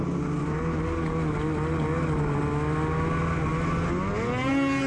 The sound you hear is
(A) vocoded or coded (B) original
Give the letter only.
B